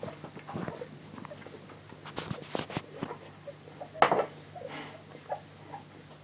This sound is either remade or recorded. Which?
recorded